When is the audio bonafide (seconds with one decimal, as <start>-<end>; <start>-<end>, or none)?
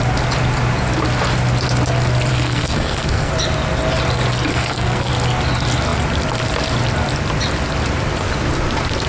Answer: 0.0-2.3; 3.3-4.5; 5.1-9.1